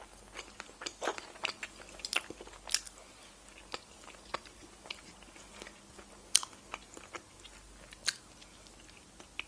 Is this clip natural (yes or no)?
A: yes